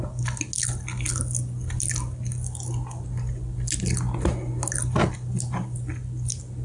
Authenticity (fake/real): real